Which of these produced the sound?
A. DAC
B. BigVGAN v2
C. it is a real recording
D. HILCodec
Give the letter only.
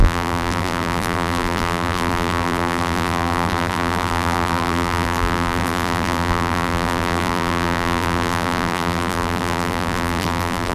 B